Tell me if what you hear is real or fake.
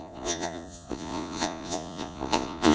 fake